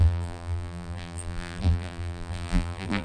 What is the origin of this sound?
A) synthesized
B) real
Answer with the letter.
A